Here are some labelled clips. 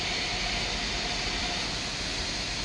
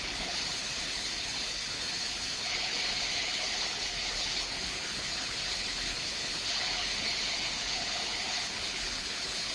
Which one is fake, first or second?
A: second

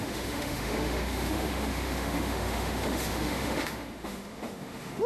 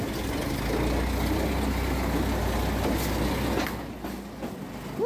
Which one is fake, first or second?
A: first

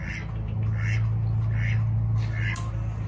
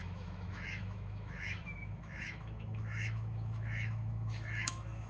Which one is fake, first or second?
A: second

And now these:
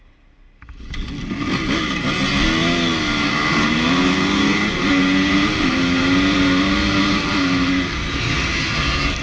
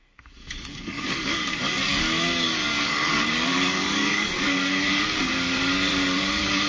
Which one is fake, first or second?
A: second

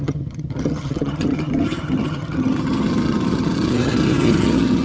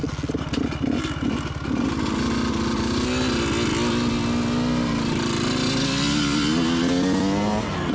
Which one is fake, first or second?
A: first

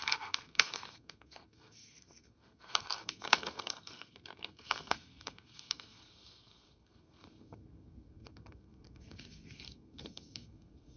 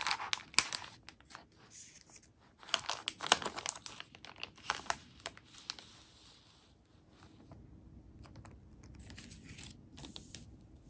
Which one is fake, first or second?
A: first